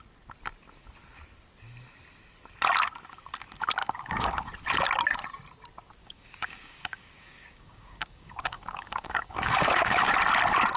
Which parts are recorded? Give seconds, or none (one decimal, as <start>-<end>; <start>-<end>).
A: 0.0-3.8; 4.5-6.0; 10.1-10.8